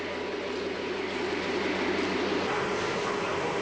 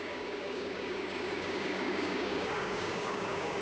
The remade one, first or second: second